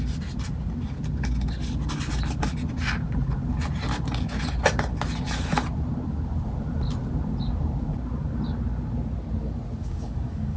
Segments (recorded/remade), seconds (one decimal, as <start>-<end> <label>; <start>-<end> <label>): 0.0-9.8 recorded; 9.8-10.6 remade